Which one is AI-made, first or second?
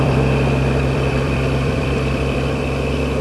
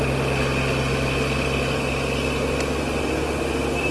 first